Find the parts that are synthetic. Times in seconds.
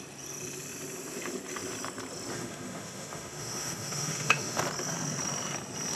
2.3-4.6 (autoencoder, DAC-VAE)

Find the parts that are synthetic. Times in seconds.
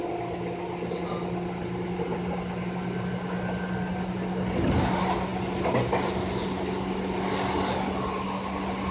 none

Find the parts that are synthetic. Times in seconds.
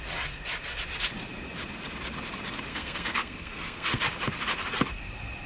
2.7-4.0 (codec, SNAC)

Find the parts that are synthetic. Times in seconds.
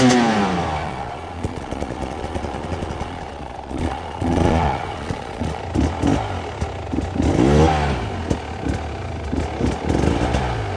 0.8-5.6 (vocoder, Vocos)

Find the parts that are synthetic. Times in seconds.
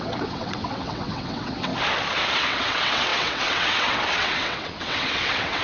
0.0-1.7 (vocoder, WaveNeXt); 2.3-5.6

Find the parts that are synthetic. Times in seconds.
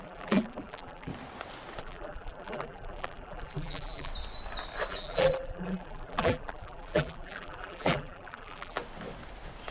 0.0-1.1 (vocoder, BigVGAN v2); 1.8-4.1; 4.9-8.8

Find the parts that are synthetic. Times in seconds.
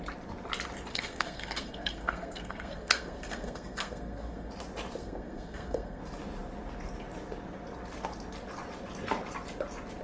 0.9-4.5 (codec, SNAC); 5.0-6.0